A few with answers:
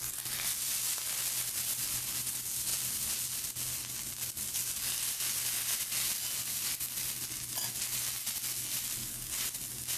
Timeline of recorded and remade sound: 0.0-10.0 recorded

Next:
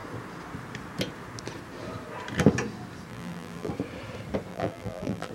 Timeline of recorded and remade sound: 0.0-3.1 recorded; 3.1-3.7 remade; 3.7-4.5 recorded; 4.5-5.3 remade

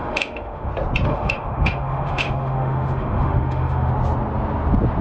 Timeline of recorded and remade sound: 0.0-0.7 remade; 0.7-1.1 recorded; 1.1-3.9 remade; 3.9-5.0 recorded

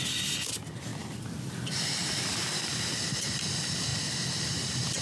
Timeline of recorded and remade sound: 0.0-0.9 recorded; 0.9-3.4 remade; 3.4-5.0 recorded